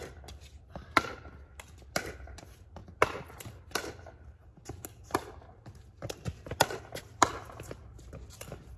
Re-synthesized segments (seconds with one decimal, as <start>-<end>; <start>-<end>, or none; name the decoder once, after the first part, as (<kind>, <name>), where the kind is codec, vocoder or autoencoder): 0.0-1.1 (vocoder, BigVGAN v2); 1.9-2.8; 3.4-4.4; 5.7-8.8

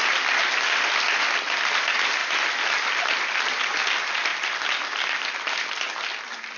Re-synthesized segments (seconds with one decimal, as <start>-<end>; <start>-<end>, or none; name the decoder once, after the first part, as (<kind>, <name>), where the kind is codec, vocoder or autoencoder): 2.2-3.0 (vocoder, BigVGAN v2); 4.3-5.7

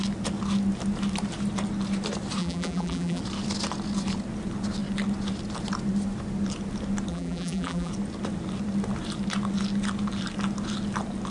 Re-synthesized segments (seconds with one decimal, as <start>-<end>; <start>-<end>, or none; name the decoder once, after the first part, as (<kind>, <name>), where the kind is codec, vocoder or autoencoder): 2.4-3.2 (vocoder, BigVGAN v2); 7.1-7.9

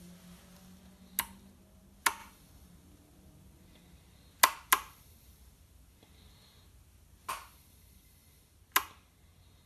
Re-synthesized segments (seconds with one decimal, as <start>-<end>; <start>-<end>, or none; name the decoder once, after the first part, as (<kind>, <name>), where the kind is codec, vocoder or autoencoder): none

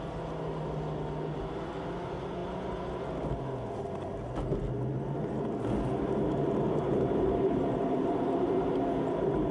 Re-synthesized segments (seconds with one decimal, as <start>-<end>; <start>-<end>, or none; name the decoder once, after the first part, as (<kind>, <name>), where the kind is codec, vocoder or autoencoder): 6.7-8.7 (vocoder, BigVGAN v2)

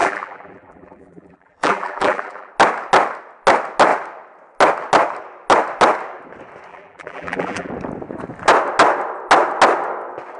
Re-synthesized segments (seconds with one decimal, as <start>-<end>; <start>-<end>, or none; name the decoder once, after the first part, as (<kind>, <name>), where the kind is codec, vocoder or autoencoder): 0.0-2.5 (vocoder, BigVGAN v2); 6.7-7.7